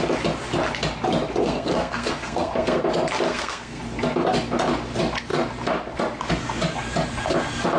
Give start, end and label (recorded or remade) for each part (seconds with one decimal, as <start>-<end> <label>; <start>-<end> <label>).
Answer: 0.0-1.4 recorded; 1.4-2.8 remade; 2.8-3.3 recorded; 3.3-3.8 remade; 3.8-7.8 recorded